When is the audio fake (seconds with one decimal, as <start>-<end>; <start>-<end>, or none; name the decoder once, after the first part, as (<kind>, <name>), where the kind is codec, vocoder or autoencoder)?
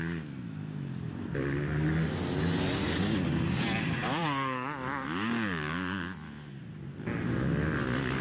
none